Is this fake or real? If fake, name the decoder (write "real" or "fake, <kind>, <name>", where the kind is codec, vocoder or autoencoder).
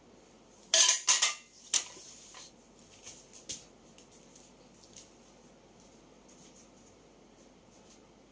real